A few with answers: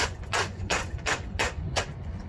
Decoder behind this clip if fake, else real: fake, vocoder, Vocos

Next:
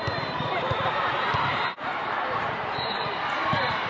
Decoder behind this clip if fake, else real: fake, vocoder, BigVGAN v2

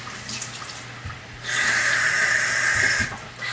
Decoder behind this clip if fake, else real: real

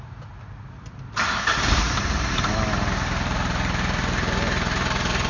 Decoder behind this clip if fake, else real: fake, vocoder, BigVGAN v2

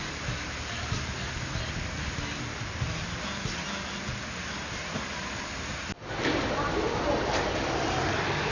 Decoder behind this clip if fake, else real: real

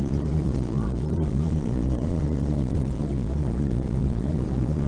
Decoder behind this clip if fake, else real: fake, vocoder, Vocos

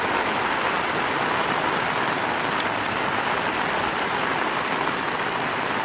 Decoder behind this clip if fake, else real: real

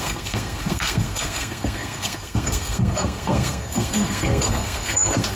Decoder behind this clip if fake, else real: fake, codec, SNAC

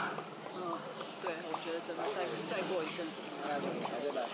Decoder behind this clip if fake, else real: real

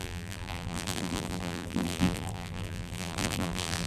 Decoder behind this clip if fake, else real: fake, vocoder, BigVGAN v2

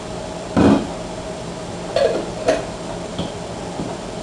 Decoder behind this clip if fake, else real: real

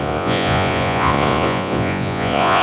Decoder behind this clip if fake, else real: fake, vocoder, Vocos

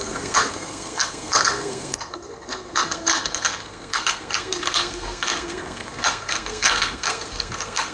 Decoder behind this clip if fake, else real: fake, codec, SNAC